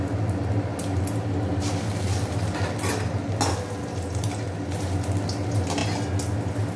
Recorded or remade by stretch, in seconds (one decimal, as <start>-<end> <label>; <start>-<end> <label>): 0.0-6.8 recorded